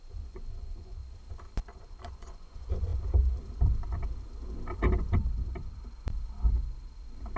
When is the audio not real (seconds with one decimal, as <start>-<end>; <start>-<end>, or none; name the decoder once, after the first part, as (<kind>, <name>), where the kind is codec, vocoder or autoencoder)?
0.0-1.0 (vocoder, Vocos); 1.8-2.9